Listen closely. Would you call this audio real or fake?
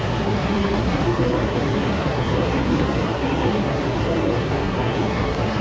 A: fake